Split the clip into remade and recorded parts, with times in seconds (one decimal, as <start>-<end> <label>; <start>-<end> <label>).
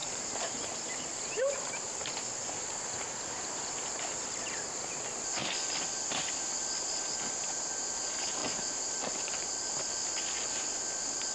0.0-1.6 remade; 1.6-2.4 recorded; 2.4-4.1 remade; 4.1-8.4 recorded; 8.4-9.7 remade; 9.7-11.3 recorded